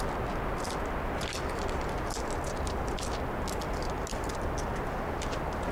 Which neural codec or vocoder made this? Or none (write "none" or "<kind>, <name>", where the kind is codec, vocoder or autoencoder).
none